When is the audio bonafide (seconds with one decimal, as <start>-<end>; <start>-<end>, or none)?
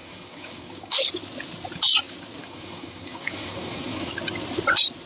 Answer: 1.1-2.4; 4.1-5.1